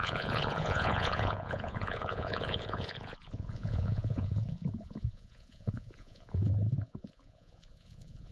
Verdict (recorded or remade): remade